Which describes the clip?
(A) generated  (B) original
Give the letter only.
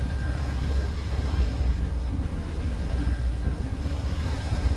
A